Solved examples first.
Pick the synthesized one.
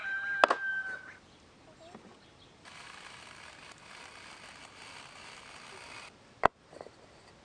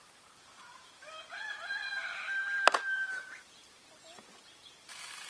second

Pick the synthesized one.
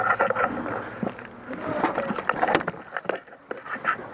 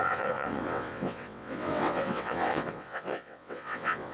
second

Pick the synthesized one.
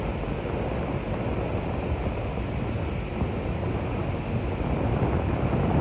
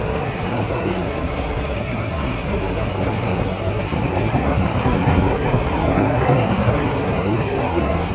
second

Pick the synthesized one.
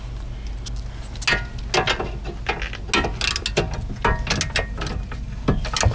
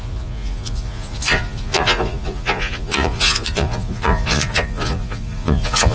second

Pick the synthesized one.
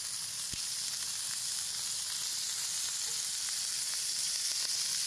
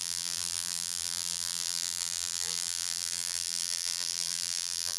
second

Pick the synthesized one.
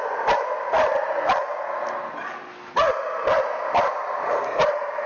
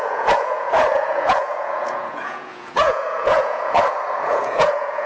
second